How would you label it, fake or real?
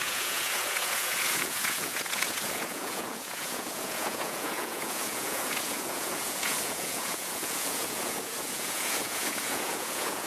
fake